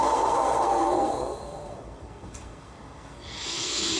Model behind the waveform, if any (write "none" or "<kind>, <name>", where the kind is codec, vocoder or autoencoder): codec, SNAC